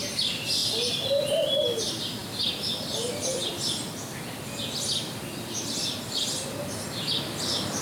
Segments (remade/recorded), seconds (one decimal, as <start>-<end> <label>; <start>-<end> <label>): 0.0-7.8 recorded